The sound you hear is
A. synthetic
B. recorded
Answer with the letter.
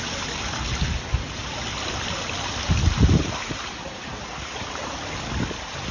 B